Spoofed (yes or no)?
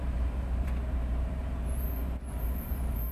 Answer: yes